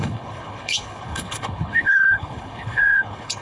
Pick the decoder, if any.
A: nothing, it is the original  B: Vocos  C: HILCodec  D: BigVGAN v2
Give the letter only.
C